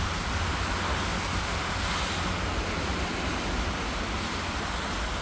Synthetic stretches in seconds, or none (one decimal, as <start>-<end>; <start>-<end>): none